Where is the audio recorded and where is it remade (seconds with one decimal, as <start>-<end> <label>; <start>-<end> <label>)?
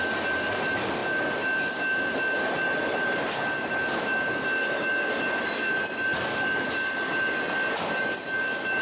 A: 0.0-8.8 recorded